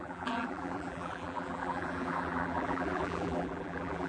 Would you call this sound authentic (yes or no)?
no